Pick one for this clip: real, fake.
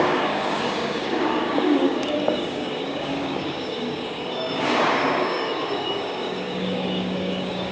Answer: fake